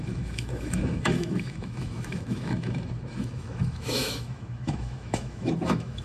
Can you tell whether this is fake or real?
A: fake